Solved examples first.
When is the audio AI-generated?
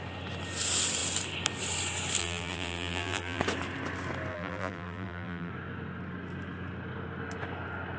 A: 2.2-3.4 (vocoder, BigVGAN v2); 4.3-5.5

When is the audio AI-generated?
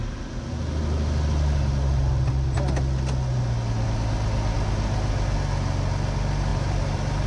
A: 6.5-7.3 (vocoder, BigVGAN v2)